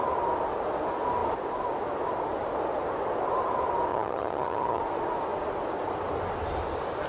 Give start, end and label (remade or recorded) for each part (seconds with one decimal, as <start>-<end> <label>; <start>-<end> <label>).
0.0-3.9 recorded; 3.9-4.8 remade; 4.8-7.1 recorded